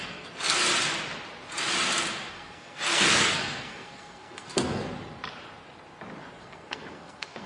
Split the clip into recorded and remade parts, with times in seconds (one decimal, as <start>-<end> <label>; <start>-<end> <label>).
0.0-0.7 remade; 0.7-2.3 recorded; 2.3-4.8 remade; 4.8-6.4 recorded; 6.4-7.5 remade